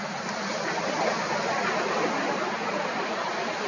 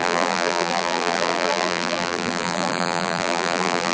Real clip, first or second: first